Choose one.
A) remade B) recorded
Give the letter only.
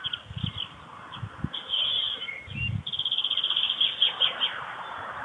B